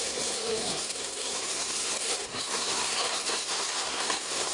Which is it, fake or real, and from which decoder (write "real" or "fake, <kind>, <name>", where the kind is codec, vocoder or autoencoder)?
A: fake, codec, SNAC